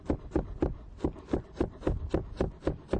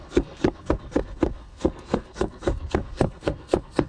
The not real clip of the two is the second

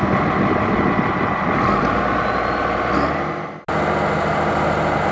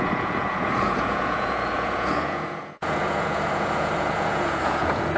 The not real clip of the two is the second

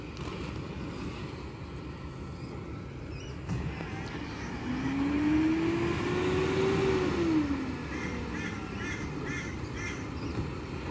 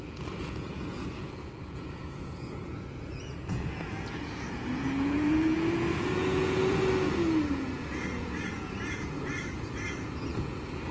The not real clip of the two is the second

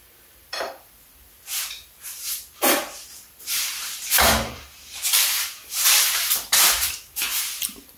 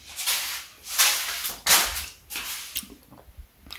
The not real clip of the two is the first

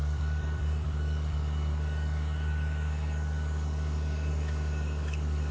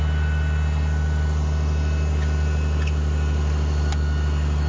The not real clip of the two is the first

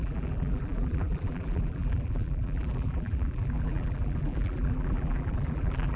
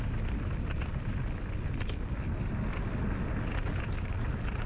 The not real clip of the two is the first